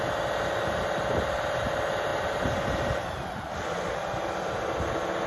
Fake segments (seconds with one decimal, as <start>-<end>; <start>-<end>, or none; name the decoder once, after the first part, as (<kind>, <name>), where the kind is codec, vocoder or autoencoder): none